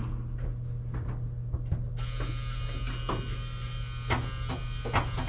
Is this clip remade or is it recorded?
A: recorded